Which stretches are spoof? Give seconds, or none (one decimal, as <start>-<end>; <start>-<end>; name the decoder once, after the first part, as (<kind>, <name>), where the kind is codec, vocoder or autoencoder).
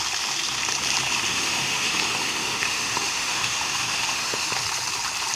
1.3-4.5 (autoencoder, DAC-VAE)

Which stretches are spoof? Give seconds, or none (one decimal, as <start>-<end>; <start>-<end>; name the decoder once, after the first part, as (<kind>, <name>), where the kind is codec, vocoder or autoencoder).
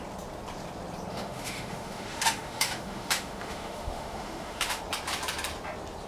1.1-4.8 (autoencoder, DAC-VAE)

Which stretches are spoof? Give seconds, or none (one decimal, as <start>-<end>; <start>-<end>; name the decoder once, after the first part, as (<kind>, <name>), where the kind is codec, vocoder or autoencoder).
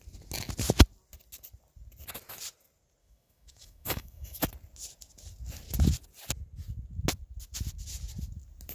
3.0-4.4 (autoencoder, DAC-VAE)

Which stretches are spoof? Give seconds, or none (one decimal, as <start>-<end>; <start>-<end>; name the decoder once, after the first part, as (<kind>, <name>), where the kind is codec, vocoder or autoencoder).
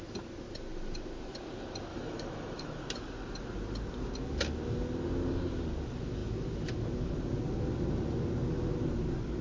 1.9-2.8 (autoencoder, DAC-VAE)